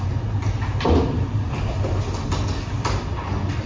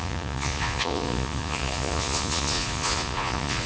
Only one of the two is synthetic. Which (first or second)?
second